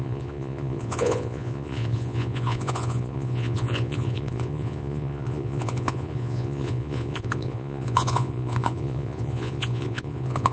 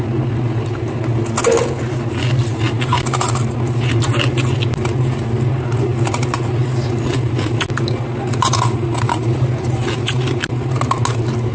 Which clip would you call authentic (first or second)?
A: second